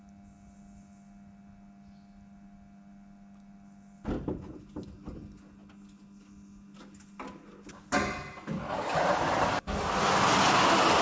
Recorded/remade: recorded